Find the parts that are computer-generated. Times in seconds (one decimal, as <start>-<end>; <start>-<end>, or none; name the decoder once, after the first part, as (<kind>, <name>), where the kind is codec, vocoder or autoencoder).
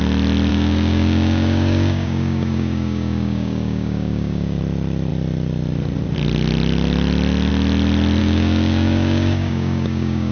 0.5-4.6 (codec, DAC); 8.2-10.3